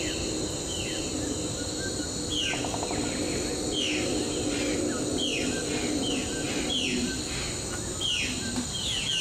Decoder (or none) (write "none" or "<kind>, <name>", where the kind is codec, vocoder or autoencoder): none